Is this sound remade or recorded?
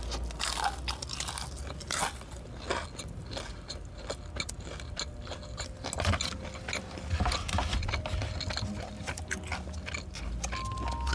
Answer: recorded